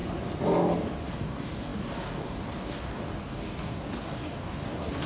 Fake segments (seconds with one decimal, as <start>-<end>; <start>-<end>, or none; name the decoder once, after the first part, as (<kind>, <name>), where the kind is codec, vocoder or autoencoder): 1.1-5.1 (codec, DAC)